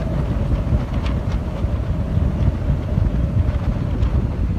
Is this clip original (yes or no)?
yes